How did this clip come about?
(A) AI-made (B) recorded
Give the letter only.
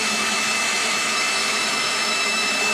A